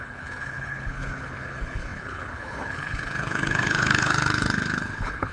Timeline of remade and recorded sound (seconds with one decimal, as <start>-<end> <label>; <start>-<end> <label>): 0.0-5.3 remade